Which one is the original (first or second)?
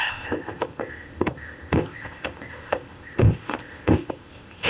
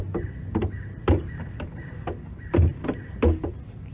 second